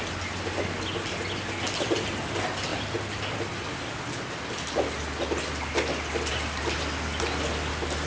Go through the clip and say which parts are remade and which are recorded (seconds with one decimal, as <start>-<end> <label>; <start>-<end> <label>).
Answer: 0.0-8.1 recorded